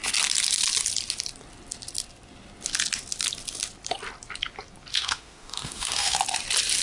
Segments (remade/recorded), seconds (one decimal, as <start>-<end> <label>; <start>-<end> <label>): 0.0-4.9 recorded; 4.9-6.2 remade; 6.2-6.8 recorded